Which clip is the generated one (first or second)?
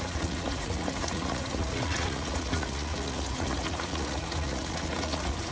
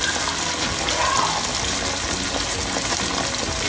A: first